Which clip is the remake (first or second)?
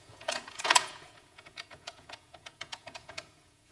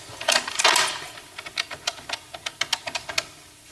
first